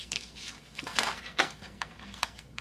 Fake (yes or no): yes